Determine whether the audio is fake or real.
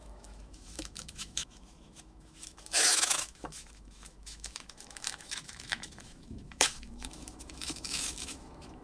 fake